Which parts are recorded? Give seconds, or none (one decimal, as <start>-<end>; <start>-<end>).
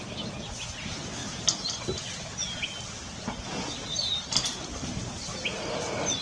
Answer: 0.0-6.2